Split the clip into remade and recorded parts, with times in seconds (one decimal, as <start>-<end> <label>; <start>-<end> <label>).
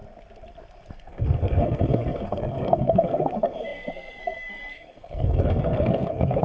0.0-0.9 recorded; 0.9-6.4 remade